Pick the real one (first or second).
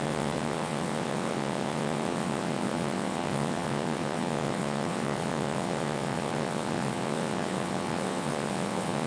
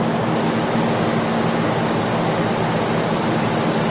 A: second